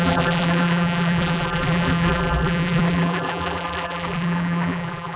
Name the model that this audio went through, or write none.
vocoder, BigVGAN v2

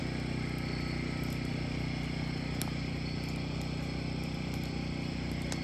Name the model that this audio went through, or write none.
none